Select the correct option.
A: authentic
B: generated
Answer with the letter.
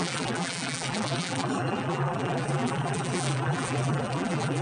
B